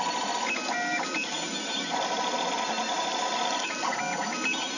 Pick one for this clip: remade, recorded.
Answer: recorded